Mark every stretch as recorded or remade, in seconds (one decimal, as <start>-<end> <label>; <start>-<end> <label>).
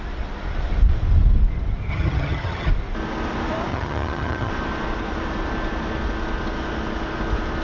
0.0-1.9 recorded; 1.9-2.7 remade; 2.7-3.7 recorded; 3.7-4.5 remade; 4.5-7.6 recorded